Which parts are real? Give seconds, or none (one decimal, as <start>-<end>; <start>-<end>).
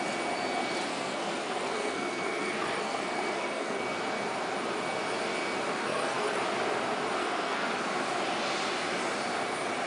0.0-0.9; 3.8-5.8; 6.4-7.2; 7.7-9.9